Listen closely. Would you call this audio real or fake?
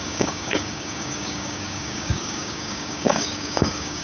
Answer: fake